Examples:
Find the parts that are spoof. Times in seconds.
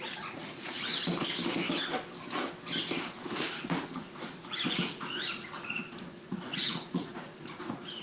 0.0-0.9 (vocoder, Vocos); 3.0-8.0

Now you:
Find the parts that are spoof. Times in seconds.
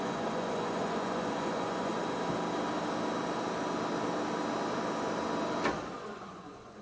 0.0-1.9 (vocoder, Vocos); 6.0-6.8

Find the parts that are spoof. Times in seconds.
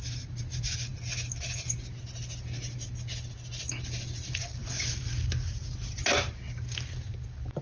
none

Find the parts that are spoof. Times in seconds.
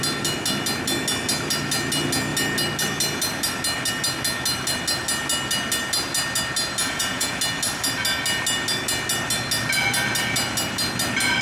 6.8-7.4 (vocoder, Vocos)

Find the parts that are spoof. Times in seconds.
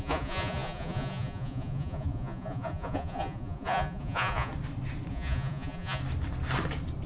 0.0-4.5 (vocoder, Vocos); 5.1-6.0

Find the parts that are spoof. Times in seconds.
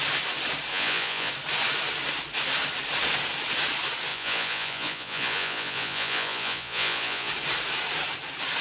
0.7-1.3 (vocoder, Vocos); 4.1-7.3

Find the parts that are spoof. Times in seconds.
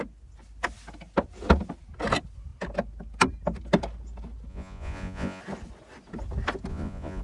4.5-5.4 (vocoder, Vocos); 6.7-7.2